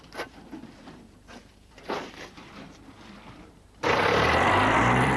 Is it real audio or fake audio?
fake